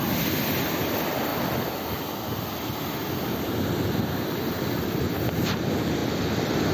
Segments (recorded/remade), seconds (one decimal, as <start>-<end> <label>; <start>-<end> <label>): 0.0-6.7 recorded